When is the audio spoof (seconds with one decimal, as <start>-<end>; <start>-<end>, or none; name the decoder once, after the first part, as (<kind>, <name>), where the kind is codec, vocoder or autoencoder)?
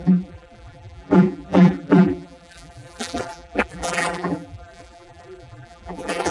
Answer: 0.0-6.3 (vocoder, BigVGAN v2)